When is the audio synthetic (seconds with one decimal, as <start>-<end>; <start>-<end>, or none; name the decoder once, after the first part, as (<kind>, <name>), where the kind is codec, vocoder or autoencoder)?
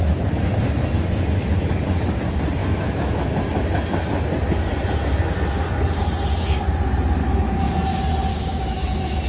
2.6-3.2 (autoencoder, DAC-VAE); 7.2-7.7; 8.3-9.3